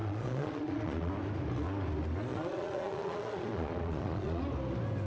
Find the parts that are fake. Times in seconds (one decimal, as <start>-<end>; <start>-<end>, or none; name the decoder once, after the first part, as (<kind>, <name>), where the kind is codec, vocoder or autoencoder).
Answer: 0.0-1.1 (vocoder, Vocos); 2.3-4.4